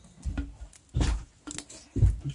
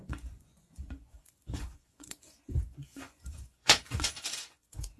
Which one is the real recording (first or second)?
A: first